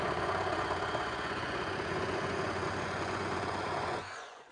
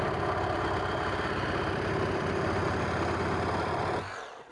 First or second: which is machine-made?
first